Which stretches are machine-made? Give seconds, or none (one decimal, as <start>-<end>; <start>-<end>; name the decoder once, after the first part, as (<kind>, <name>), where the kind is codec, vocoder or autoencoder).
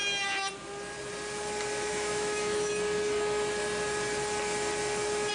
1.9-2.7 (autoencoder, DAC-VAE)